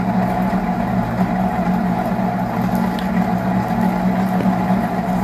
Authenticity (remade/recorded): recorded